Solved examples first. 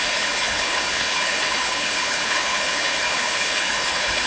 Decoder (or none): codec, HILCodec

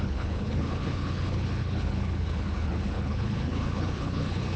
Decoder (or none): codec, HILCodec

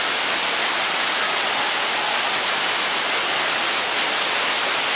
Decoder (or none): none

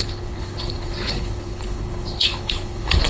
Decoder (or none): codec, HILCodec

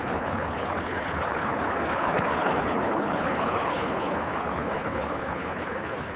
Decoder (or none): codec, HILCodec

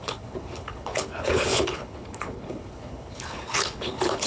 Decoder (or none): codec, HILCodec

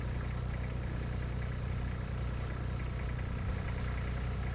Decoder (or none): none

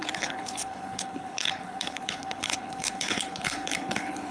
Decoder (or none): codec, HILCodec